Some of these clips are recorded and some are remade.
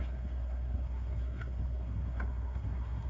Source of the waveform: remade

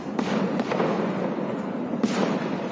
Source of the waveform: recorded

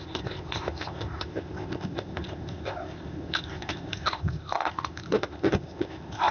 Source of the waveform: remade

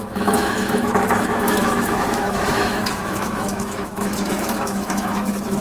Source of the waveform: remade